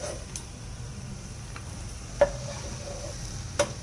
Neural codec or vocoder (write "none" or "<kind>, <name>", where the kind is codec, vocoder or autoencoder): vocoder, BigVGAN v2